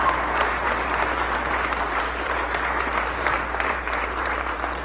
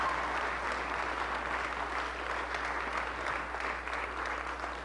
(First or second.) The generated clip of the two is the first